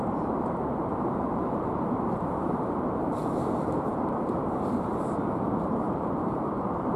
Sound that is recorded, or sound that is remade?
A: remade